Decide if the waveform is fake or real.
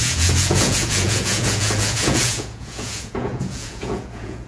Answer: fake